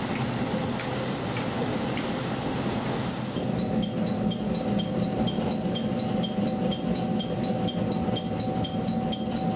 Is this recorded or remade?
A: recorded